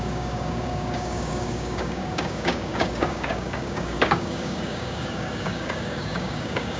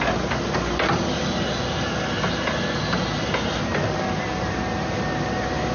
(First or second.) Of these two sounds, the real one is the second